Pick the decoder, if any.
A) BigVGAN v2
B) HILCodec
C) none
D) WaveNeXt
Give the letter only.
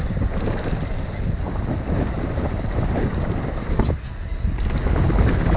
C